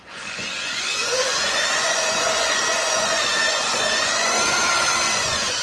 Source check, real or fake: fake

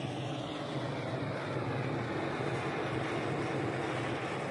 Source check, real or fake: real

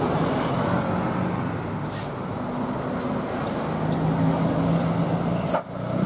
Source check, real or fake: real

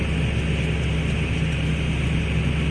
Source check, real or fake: real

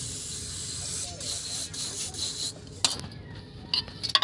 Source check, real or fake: real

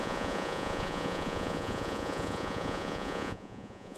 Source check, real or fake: fake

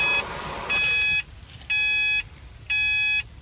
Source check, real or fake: real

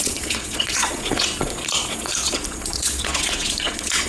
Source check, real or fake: fake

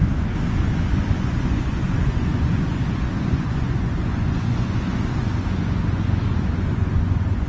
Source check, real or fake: fake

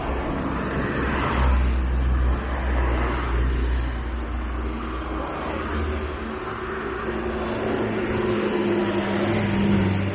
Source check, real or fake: real